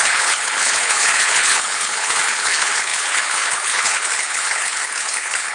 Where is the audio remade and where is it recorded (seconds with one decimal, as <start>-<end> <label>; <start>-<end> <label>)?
0.0-5.5 remade